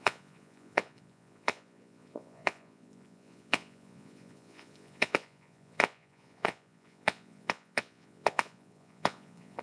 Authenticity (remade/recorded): remade